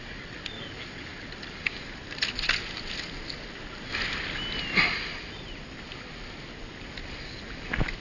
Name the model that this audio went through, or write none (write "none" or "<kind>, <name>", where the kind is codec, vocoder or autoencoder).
none